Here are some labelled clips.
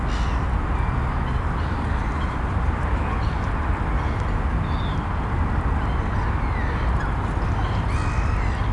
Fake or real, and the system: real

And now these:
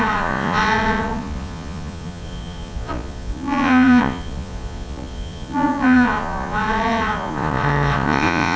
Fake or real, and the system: fake, vocoder, Vocos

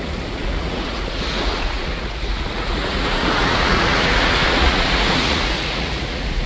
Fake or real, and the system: fake, vocoder, Vocos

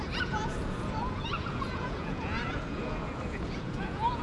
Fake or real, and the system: fake, vocoder, Vocos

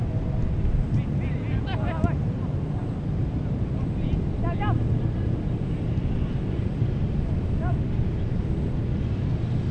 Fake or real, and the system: real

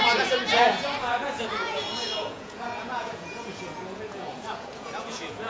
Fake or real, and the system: fake, vocoder, Vocos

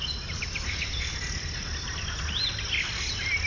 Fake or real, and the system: real